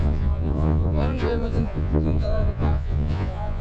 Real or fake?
fake